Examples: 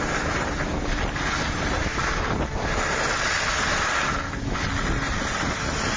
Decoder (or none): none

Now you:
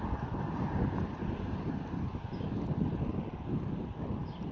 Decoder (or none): none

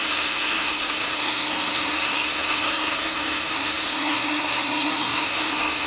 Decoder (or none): codec, SNAC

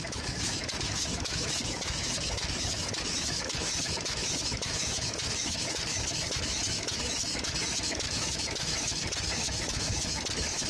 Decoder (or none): autoencoder, DAC-VAE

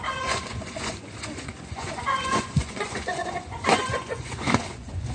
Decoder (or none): vocoder, Vocos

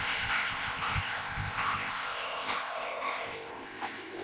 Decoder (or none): codec, ZipCodec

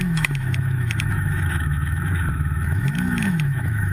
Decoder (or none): autoencoder, DAC-VAE